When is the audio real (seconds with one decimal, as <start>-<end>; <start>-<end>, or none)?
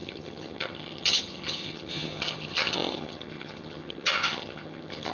none